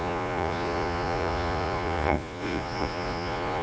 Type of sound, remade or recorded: remade